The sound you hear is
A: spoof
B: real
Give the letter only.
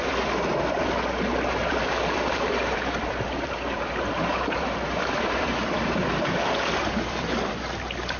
A